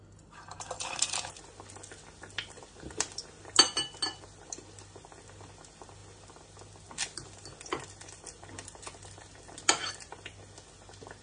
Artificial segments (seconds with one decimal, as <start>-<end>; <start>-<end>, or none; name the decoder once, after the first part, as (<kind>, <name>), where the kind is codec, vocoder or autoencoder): none